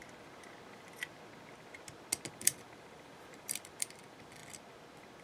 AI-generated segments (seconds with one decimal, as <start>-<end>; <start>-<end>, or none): 2.3-4.4

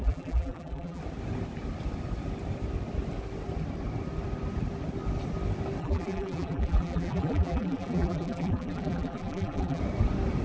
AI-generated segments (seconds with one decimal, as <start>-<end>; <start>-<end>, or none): 0.0-1.0; 5.8-9.8